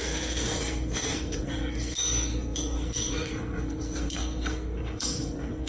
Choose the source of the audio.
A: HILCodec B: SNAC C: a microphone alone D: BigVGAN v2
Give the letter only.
B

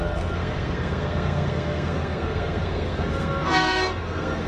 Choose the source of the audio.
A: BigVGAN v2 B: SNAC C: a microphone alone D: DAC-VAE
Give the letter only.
B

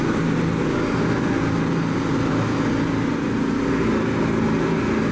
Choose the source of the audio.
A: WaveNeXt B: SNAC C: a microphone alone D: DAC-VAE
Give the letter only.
C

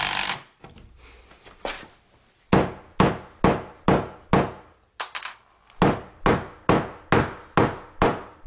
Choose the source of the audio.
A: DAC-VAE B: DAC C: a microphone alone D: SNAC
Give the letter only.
C